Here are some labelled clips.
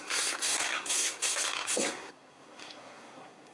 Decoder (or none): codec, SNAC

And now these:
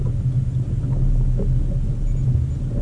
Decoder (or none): none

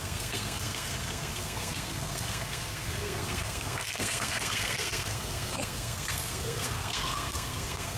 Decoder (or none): codec, SNAC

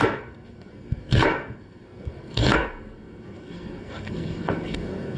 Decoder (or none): codec, SNAC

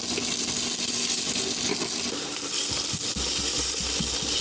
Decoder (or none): none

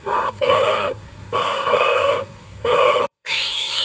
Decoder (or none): codec, SNAC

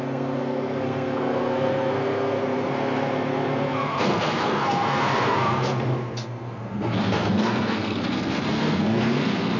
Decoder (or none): codec, SNAC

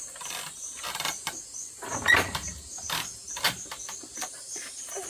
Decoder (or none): none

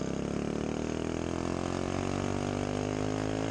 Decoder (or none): none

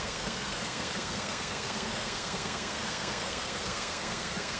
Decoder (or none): codec, SNAC